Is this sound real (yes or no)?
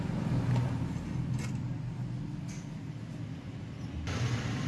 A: yes